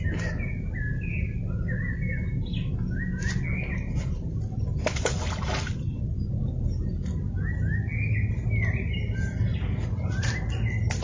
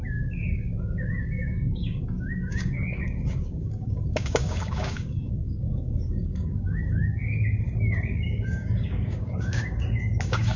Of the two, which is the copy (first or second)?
second